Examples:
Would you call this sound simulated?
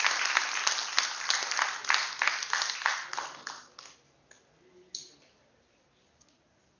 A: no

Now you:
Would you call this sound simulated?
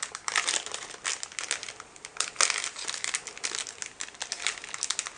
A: no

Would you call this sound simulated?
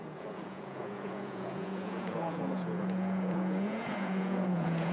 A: yes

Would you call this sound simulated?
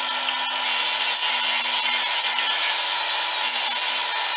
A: no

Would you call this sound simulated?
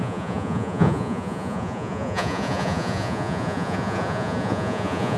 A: yes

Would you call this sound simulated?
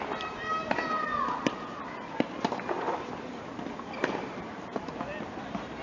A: no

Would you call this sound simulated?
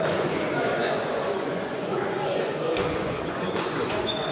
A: yes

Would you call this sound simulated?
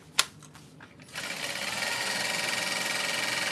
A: no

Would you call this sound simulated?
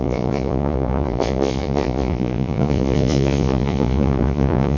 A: yes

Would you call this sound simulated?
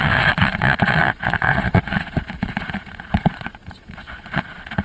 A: yes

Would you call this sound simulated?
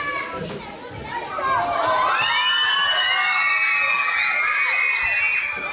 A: no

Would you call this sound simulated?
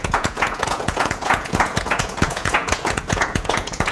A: yes